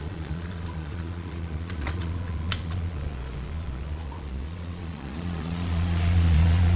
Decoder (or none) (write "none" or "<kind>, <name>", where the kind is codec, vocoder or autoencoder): vocoder, Vocos